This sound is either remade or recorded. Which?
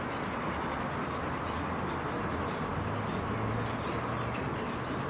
recorded